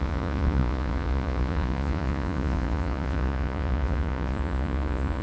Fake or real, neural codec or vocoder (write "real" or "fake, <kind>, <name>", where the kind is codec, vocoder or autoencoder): fake, vocoder, Vocos